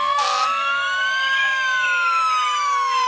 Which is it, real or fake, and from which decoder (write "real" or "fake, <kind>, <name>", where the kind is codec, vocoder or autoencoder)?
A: fake, autoencoder, DAC-VAE